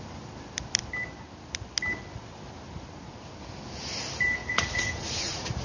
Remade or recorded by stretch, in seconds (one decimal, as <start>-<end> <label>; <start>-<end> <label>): 0.0-4.4 recorded; 4.4-5.6 remade